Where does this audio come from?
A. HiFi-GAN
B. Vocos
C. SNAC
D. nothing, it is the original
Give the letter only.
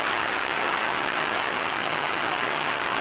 A